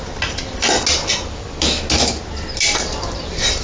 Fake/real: real